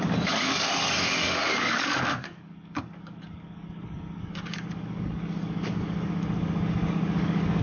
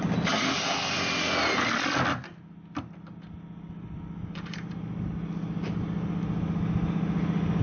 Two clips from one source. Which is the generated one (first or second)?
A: first